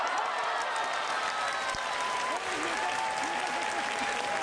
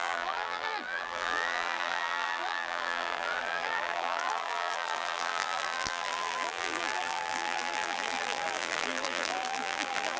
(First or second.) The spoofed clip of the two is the second